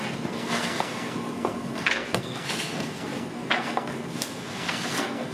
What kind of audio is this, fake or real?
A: fake